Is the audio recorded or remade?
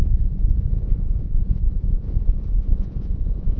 remade